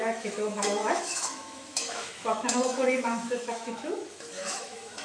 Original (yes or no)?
no